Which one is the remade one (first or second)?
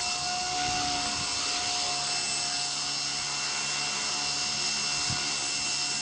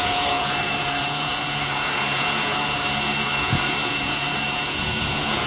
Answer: second